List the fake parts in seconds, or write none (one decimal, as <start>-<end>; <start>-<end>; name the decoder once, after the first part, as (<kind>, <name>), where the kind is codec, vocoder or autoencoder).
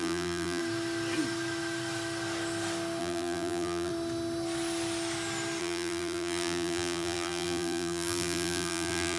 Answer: 0.0-0.6 (vocoder, BigVGAN v2); 3.0-3.9; 5.6-9.2